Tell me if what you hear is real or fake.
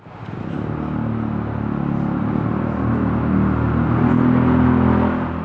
real